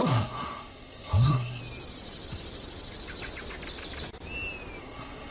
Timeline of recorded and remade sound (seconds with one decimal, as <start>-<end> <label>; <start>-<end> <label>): 0.0-1.6 remade; 1.6-4.8 recorded; 4.8-5.3 remade